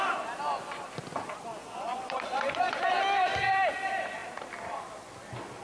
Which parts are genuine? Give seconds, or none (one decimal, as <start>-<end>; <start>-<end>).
0.0-1.6; 2.8-5.6